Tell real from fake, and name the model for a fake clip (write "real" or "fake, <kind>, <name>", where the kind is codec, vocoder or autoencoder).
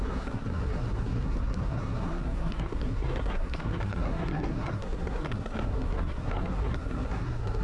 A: fake, codec, SNAC